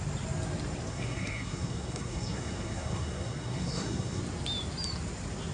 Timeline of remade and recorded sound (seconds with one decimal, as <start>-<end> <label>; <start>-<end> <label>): 0.0-0.9 recorded; 0.9-4.2 remade; 4.2-5.5 recorded

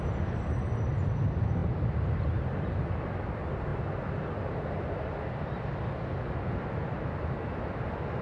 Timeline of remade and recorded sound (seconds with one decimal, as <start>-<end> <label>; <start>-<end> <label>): 0.0-8.2 recorded

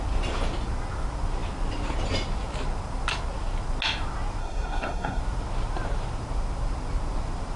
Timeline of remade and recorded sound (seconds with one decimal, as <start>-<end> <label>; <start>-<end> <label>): 0.0-4.4 recorded; 4.4-5.2 remade; 5.2-7.6 recorded

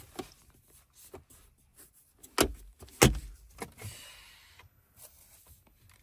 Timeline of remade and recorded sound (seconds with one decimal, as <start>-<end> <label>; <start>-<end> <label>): 0.0-6.0 recorded

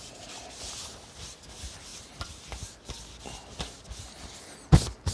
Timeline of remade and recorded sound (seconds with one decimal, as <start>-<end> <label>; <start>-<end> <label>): 0.0-5.1 recorded

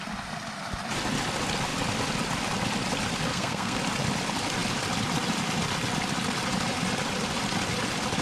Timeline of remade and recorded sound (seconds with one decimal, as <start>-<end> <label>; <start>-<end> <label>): 0.0-3.3 recorded; 3.3-3.8 remade; 3.8-8.2 recorded

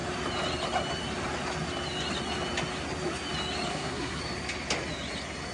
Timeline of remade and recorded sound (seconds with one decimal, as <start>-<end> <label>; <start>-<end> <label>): 0.0-3.7 recorded; 3.7-4.2 remade; 4.2-5.5 recorded

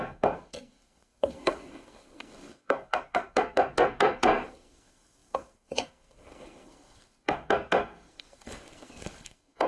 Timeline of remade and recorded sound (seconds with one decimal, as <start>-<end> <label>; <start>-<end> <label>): 0.0-9.7 remade